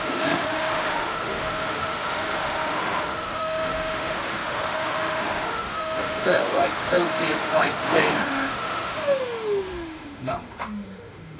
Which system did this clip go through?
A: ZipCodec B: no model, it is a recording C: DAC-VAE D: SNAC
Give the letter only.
C